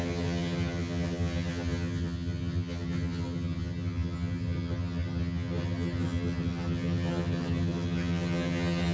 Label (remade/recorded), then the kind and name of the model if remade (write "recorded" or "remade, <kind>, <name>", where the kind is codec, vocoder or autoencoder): remade, vocoder, HiFi-GAN